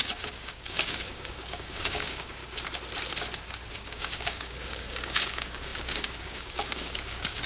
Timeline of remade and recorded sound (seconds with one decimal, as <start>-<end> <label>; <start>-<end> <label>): 0.0-2.4 remade; 2.4-3.7 recorded; 3.7-7.5 remade